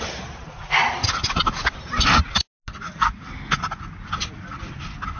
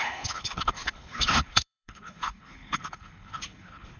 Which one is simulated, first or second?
second